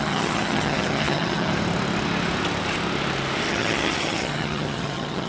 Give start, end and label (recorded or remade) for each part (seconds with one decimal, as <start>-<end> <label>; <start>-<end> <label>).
0.0-1.5 remade; 1.5-3.5 recorded; 3.5-5.3 remade